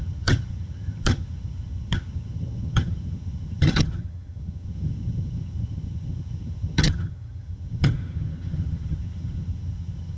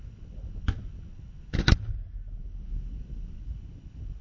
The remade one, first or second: first